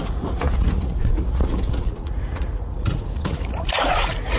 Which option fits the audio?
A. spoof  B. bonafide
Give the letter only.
A